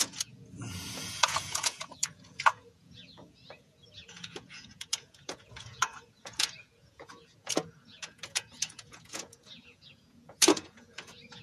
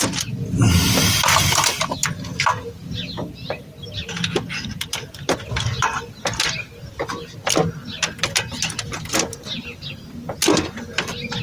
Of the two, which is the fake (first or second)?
first